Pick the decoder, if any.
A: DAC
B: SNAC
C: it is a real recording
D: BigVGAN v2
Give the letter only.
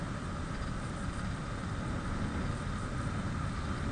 C